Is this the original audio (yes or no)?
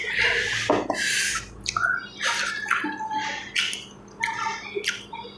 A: yes